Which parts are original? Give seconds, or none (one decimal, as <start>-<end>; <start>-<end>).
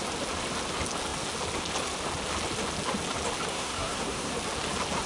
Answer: 0.0-3.5; 4.3-5.1